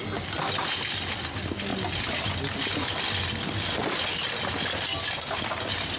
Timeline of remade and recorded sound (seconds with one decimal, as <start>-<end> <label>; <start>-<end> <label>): 0.0-6.0 recorded

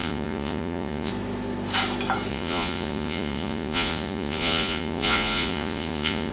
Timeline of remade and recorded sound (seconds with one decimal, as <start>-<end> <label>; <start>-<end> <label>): 0.0-1.1 remade; 1.1-2.3 recorded; 2.3-6.3 remade

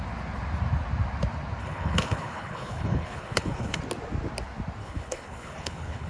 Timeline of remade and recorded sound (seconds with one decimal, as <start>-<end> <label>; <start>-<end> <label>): 0.0-1.6 recorded; 1.6-3.8 remade; 3.8-4.8 recorded; 4.8-6.1 remade

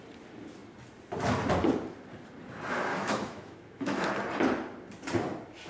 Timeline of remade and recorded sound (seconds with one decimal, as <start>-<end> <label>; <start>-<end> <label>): 0.0-2.9 recorded; 2.9-4.1 remade; 4.1-5.7 recorded

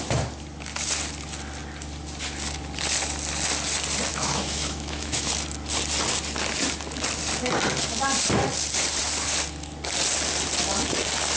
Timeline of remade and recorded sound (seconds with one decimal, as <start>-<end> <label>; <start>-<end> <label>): 0.0-4.1 recorded; 4.1-5.3 remade; 5.3-11.4 recorded

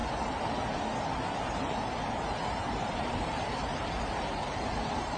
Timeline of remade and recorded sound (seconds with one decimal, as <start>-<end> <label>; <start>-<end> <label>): 0.0-1.0 recorded; 1.0-5.2 remade